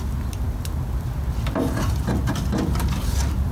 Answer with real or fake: real